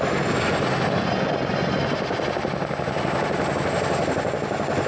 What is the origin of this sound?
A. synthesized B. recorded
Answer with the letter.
B